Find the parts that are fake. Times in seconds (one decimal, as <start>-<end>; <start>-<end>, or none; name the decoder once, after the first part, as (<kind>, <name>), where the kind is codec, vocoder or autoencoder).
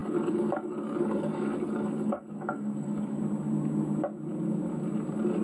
0.0-3.2 (codec, DAC)